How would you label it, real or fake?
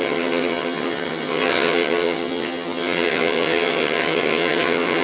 fake